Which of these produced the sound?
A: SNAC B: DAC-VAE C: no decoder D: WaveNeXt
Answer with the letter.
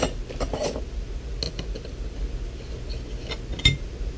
C